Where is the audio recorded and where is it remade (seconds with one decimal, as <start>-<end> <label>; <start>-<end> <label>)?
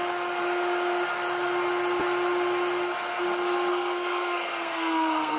0.0-3.7 recorded; 3.7-5.4 remade